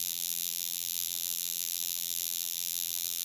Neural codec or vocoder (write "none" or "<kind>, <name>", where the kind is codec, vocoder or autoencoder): vocoder, BigVGAN v2